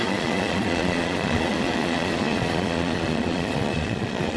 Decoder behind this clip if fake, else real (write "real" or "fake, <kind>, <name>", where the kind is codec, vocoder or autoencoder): fake, vocoder, Vocos